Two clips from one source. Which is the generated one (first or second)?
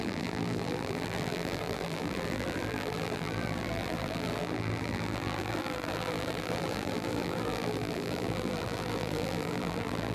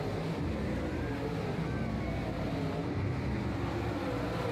first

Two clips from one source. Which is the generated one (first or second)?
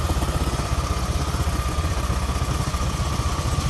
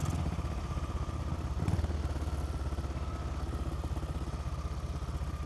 first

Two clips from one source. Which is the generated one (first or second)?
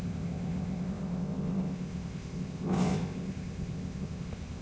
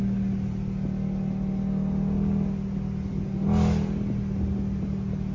first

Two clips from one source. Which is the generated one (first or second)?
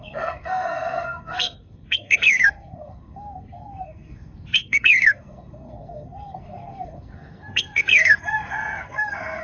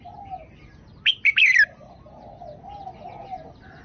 first